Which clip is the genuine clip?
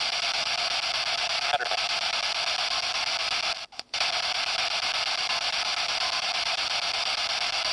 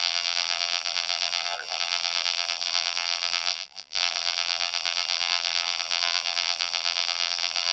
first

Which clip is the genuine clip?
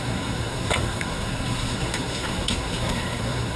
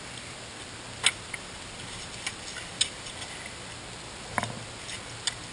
second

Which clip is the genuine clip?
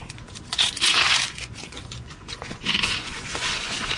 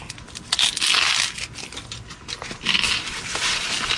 second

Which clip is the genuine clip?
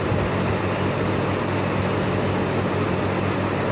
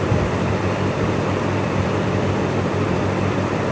first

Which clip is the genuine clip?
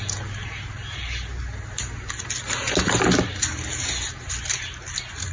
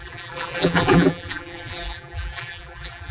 first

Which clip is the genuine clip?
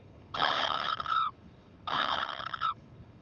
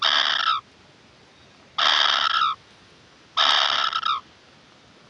second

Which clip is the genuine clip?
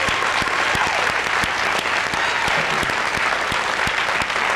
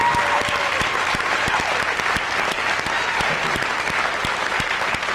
first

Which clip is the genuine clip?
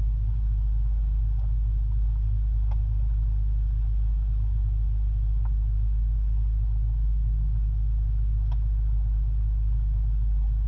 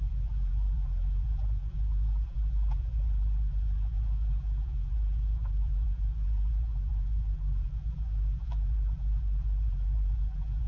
first